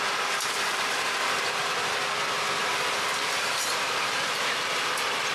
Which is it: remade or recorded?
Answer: recorded